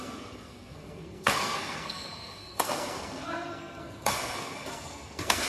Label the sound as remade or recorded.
remade